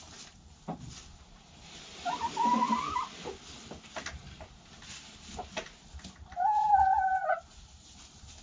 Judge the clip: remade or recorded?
recorded